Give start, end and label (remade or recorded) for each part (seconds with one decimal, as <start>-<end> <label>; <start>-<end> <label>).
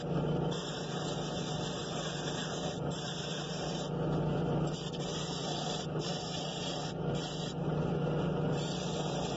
0.0-1.8 recorded; 1.8-3.8 remade; 3.8-9.4 recorded